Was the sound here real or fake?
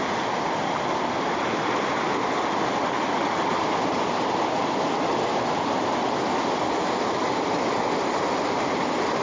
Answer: real